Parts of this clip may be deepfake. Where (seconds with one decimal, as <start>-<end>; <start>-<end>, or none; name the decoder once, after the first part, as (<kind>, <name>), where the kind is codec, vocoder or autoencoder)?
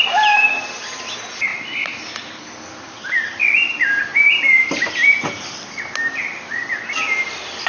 none